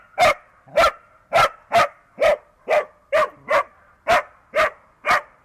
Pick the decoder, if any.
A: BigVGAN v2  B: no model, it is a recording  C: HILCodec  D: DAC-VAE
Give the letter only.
B